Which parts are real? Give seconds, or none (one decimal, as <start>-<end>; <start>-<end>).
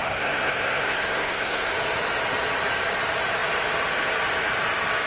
1.7-5.1